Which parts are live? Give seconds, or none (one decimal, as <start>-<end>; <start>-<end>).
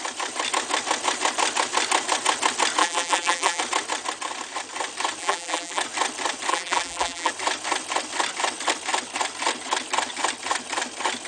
0.0-2.8; 3.6-5.2; 5.8-6.5; 7.3-11.3